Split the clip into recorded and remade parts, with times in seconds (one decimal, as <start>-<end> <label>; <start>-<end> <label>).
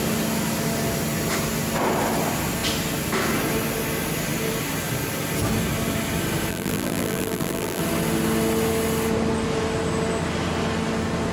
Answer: 0.0-6.5 recorded; 6.5-7.8 remade; 7.8-11.3 recorded